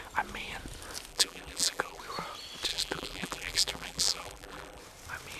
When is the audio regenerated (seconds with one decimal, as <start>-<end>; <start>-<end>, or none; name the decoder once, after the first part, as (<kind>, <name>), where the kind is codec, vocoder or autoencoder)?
1.1-2.0 (vocoder, BigVGAN v2); 2.7-4.8